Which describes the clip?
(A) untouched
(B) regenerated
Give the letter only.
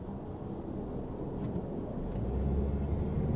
A